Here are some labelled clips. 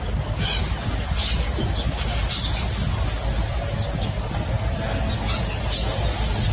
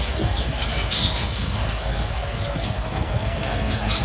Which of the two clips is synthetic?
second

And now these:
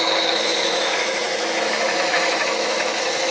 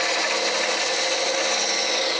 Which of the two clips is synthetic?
first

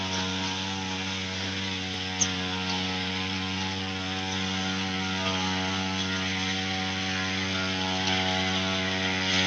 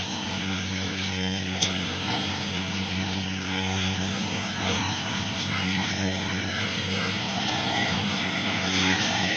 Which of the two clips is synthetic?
second